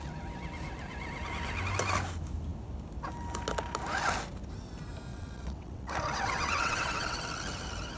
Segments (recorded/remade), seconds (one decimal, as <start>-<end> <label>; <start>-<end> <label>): 0.0-5.1 recorded; 5.1-7.2 remade; 7.2-8.0 recorded